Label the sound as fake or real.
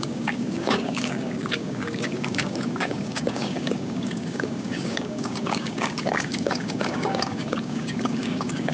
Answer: fake